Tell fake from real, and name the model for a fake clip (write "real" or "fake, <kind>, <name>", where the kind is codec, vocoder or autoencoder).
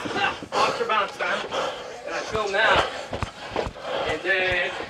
fake, vocoder, BigVGAN v2